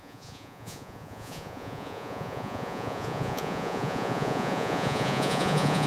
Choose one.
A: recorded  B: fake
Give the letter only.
B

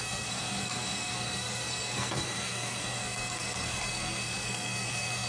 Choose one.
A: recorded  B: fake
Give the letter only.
B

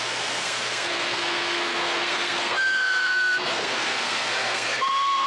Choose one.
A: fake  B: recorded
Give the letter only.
A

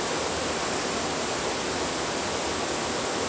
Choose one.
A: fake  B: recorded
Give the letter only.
B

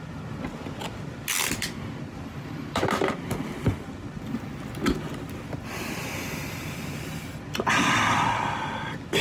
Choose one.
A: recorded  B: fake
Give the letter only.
A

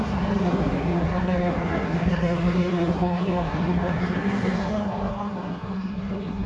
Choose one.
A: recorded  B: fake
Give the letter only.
B